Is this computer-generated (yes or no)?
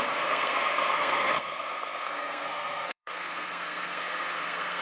yes